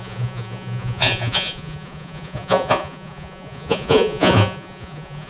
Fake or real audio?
fake